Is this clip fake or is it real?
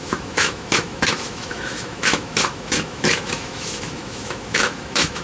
fake